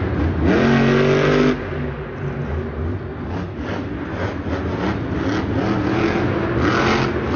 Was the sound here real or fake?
real